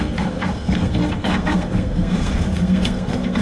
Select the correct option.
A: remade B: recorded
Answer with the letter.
A